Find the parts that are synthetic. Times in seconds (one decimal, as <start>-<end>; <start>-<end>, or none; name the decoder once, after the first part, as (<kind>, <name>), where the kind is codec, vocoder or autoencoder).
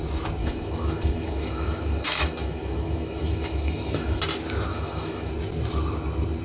0.4-4.2 (autoencoder, DAC-VAE); 4.7-5.3